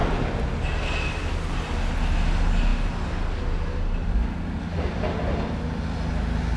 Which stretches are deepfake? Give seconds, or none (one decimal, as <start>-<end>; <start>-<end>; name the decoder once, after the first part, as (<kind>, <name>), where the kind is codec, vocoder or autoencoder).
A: none